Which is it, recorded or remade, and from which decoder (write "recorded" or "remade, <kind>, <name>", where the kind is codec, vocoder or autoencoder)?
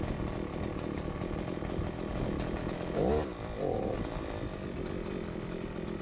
recorded